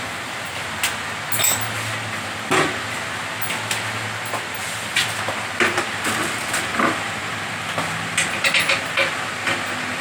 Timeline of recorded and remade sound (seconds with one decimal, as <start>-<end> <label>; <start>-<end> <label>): 0.0-10.0 recorded